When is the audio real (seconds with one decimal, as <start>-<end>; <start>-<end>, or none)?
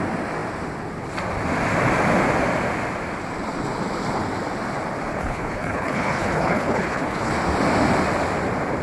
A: 0.0-5.1; 7.3-8.8